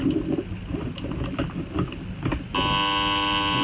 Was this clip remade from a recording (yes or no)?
no